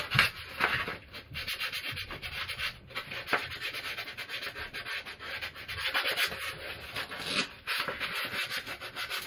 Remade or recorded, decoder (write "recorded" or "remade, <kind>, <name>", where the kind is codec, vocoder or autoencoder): recorded